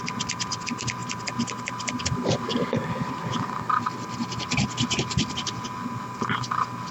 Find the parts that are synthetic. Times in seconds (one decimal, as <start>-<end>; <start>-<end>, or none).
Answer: 1.0-3.9